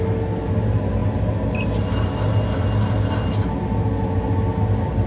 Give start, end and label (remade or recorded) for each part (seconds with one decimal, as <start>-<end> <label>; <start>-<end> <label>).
0.0-5.1 recorded